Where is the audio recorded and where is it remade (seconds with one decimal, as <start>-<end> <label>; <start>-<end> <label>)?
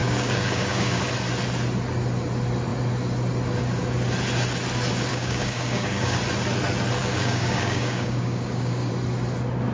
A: 0.0-1.0 remade; 1.0-5.1 recorded; 5.1-6.2 remade; 6.2-7.0 recorded; 7.0-8.9 remade; 8.9-9.7 recorded